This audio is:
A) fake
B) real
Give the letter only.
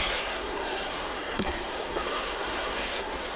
A